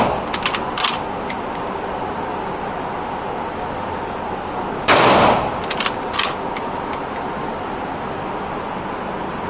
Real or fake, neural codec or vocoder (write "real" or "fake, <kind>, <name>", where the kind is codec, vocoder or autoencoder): real